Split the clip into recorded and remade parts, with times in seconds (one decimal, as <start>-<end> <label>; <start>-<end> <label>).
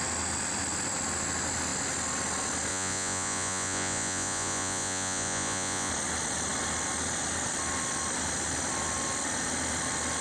0.0-2.7 recorded; 2.7-5.9 remade; 5.9-10.2 recorded